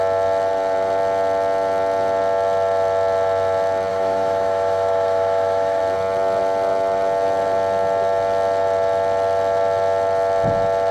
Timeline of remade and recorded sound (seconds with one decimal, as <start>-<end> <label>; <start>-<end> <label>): 0.0-3.9 recorded; 3.9-5.8 remade; 5.8-10.9 recorded

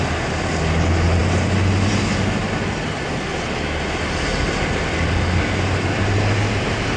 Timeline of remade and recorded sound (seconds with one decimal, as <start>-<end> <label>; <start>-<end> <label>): 0.0-7.0 recorded

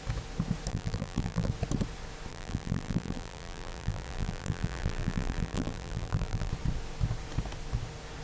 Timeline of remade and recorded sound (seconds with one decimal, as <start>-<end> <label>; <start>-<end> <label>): 0.0-0.7 recorded; 0.7-1.5 remade; 1.5-2.3 recorded; 2.3-6.5 remade; 6.5-8.2 recorded

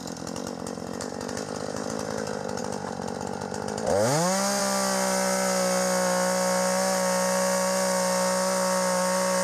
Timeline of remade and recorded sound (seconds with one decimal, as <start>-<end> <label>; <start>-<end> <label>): 0.0-9.4 recorded

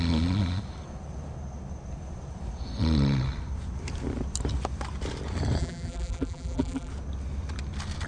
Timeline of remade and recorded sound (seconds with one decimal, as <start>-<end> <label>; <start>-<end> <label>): 0.0-5.6 recorded; 5.6-6.9 remade; 6.9-8.1 recorded

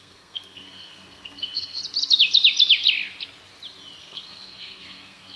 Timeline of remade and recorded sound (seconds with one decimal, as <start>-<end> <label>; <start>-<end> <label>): 0.0-1.8 remade; 1.8-4.0 recorded; 4.0-5.4 remade